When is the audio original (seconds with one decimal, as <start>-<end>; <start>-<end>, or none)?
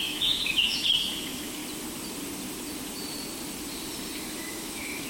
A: 1.6-4.2